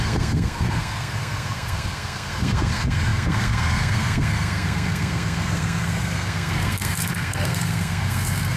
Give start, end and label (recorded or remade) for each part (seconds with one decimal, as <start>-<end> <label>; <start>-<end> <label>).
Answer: 0.0-8.6 remade